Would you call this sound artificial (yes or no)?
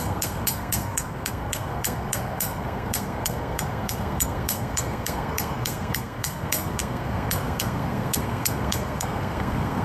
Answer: yes